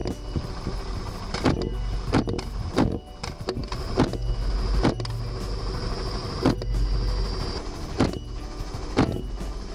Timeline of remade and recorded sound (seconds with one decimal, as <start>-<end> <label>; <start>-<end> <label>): 0.0-9.7 recorded

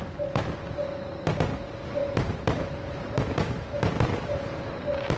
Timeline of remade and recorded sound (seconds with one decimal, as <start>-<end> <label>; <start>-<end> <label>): 0.0-2.0 recorded; 2.0-3.8 remade; 3.8-5.2 recorded

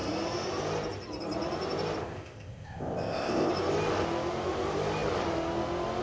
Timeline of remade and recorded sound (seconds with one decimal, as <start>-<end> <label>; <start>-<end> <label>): 0.0-2.0 recorded; 2.0-3.5 remade; 3.5-6.0 recorded

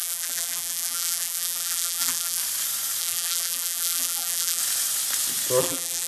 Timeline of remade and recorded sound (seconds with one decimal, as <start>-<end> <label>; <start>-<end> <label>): 0.0-2.4 remade; 2.4-3.0 recorded; 3.0-4.6 remade; 4.6-5.6 recorded; 5.6-6.1 remade

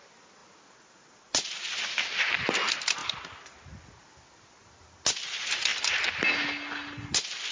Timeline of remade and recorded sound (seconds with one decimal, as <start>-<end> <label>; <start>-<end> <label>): 0.0-5.7 recorded; 5.7-6.2 remade; 6.2-7.5 recorded

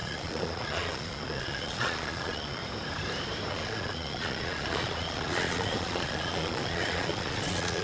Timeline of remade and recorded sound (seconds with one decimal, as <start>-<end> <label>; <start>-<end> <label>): 0.0-2.6 remade; 2.6-3.5 recorded; 3.5-7.8 remade